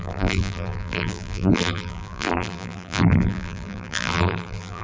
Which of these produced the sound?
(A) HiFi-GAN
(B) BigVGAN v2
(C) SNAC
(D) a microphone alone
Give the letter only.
B